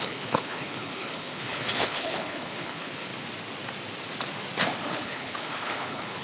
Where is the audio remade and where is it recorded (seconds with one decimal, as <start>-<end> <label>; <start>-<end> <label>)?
0.0-3.1 remade; 3.1-4.9 recorded; 4.9-6.2 remade